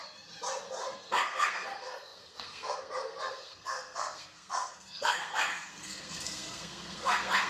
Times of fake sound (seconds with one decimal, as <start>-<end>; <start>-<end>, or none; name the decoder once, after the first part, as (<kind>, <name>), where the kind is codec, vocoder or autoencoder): 0.7-7.5 (codec, SNAC)